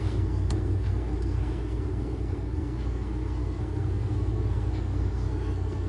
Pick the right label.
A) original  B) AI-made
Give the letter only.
B